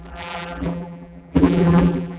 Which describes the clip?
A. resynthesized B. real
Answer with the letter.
A